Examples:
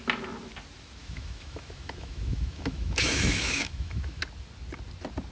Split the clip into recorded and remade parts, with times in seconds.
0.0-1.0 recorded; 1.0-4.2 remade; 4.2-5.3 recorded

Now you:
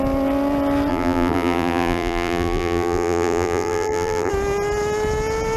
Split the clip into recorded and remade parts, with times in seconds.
0.0-0.9 recorded; 0.9-4.3 remade; 4.3-5.6 recorded

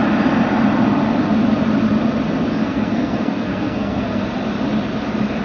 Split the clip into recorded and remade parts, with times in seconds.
0.0-2.6 recorded; 2.6-4.2 remade; 4.2-5.4 recorded

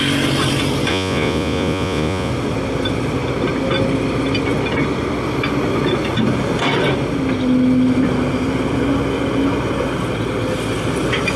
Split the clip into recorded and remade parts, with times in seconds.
0.0-0.9 recorded; 0.9-2.3 remade; 2.3-11.4 recorded

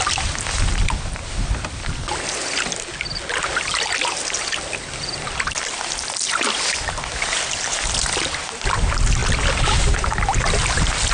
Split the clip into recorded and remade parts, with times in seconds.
0.0-11.1 recorded

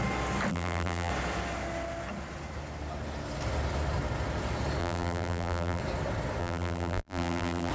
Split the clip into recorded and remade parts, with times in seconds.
0.0-0.5 recorded; 0.5-1.1 remade; 1.1-4.8 recorded; 4.8-5.8 remade; 5.8-6.4 recorded; 6.4-7.7 remade